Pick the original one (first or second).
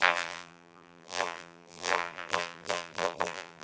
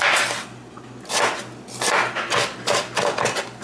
second